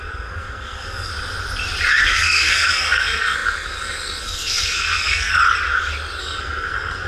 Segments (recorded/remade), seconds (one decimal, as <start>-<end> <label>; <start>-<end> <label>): 0.0-1.1 remade; 1.1-2.0 recorded; 2.0-5.4 remade; 5.4-6.2 recorded; 6.2-7.1 remade